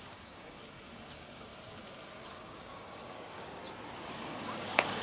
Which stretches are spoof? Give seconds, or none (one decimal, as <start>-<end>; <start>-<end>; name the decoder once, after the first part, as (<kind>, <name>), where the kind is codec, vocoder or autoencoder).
0.0-0.6 (codec, DAC); 1.1-1.5; 2.3-3.6; 4.2-5.0